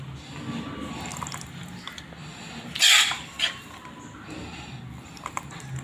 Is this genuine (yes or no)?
yes